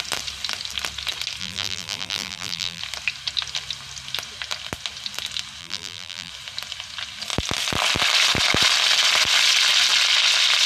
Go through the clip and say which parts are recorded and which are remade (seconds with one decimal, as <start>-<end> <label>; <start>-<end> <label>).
0.0-1.4 recorded; 1.4-2.8 remade; 2.8-5.6 recorded; 5.6-6.3 remade; 6.3-10.7 recorded